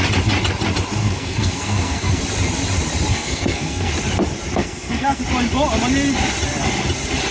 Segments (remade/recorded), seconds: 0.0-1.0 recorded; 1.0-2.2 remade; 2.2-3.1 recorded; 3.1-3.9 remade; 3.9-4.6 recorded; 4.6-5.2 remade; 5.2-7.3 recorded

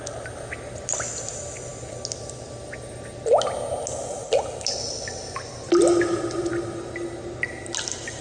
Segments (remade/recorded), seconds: 0.0-8.2 recorded

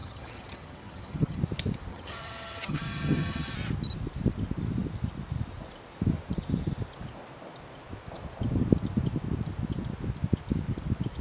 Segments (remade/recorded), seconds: 0.0-1.4 remade; 1.4-1.9 recorded; 1.9-3.5 remade; 3.5-11.2 recorded

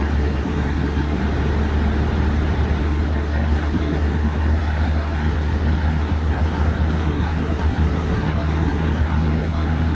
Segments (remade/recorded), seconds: 0.0-1.2 remade; 1.2-2.8 recorded; 2.8-9.9 remade

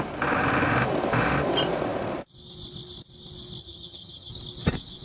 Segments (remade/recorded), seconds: 0.0-3.6 recorded; 3.6-4.3 remade; 4.3-5.0 recorded

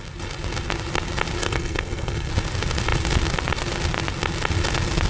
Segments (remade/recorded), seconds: 0.0-1.4 recorded; 1.4-2.3 remade; 2.3-5.1 recorded

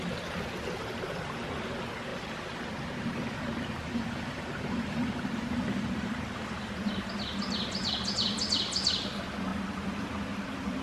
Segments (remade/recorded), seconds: 0.0-2.1 recorded; 2.1-2.6 remade; 2.6-3.8 recorded; 3.8-6.7 remade; 6.7-10.8 recorded